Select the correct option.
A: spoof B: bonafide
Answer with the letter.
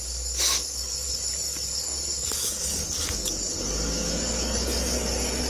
A